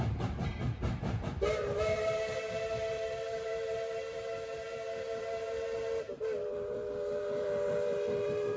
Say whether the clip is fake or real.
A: fake